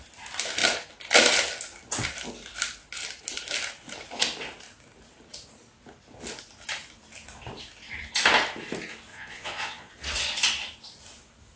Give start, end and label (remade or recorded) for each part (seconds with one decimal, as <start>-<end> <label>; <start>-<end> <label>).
0.0-9.1 recorded; 9.1-9.9 remade; 9.9-11.6 recorded